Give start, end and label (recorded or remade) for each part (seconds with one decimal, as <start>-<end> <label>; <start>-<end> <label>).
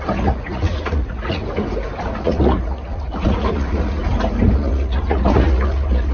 0.0-1.4 remade; 1.4-2.0 recorded; 2.0-4.0 remade; 4.0-4.5 recorded; 4.5-6.1 remade